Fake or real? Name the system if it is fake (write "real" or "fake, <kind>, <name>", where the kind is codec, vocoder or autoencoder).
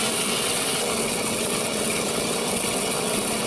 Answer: fake, vocoder, WaveNeXt